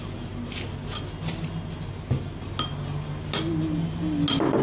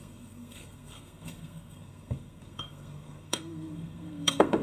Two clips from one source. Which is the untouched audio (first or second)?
first